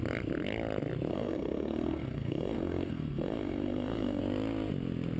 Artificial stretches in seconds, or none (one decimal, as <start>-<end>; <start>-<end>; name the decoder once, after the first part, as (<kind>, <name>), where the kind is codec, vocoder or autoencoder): 1.1-4.2 (codec, SNAC)